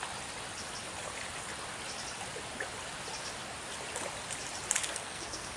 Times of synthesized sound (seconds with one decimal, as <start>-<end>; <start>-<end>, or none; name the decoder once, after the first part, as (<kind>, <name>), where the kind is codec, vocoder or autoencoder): 4.8-5.6 (codec, SNAC)